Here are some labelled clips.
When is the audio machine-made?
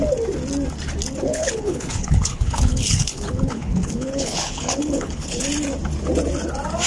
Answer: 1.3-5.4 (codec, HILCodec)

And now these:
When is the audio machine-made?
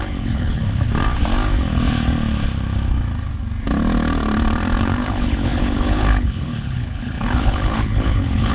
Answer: 0.0-0.6 (codec, HILCodec); 4.8-8.5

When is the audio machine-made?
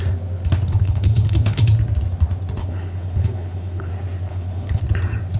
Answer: 0.8-1.6 (codec, HILCodec); 2.6-3.9; 4.3-4.8